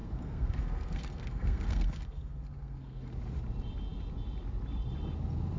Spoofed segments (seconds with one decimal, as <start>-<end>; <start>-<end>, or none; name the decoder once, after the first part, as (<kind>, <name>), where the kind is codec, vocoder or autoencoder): 0.0-3.1 (codec, SNAC)